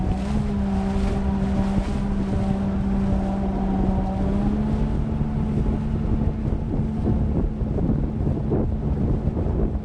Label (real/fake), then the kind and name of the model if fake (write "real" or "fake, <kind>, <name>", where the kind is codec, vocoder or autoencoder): real